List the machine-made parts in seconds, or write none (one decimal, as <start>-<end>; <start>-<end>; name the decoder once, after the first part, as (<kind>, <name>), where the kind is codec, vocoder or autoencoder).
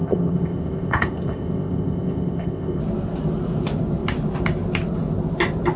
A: 0.0-2.8 (codec, ZipCodec)